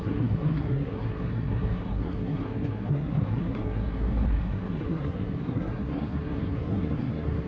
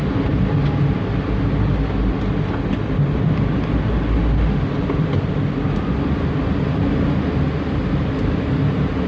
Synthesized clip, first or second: first